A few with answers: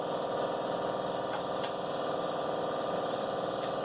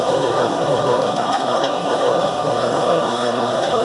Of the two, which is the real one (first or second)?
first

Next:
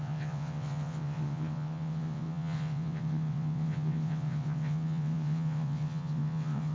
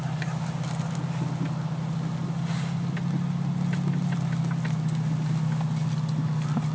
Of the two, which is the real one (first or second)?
second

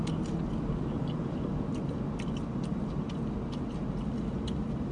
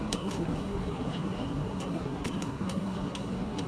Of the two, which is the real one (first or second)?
first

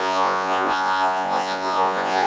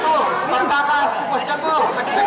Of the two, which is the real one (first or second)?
second